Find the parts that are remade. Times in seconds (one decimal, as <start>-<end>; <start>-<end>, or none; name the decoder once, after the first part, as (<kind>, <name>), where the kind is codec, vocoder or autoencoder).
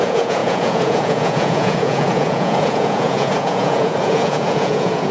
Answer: 0.0-5.1 (vocoder, Vocos)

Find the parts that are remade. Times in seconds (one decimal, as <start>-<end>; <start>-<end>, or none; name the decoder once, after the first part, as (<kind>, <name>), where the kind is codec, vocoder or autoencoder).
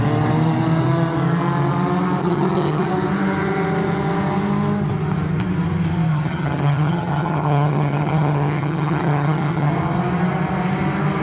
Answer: 2.2-2.9 (vocoder, HiFi-GAN); 6.1-9.7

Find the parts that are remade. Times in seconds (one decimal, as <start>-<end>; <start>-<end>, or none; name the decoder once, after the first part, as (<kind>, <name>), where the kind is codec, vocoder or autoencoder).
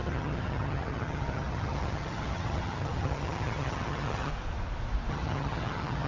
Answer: 0.0-4.3 (vocoder, HiFi-GAN); 5.1-6.1